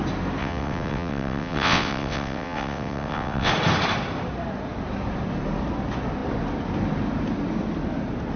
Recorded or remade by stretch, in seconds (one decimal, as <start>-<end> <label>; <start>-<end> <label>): 0.0-0.4 recorded; 0.4-3.5 remade; 3.5-8.4 recorded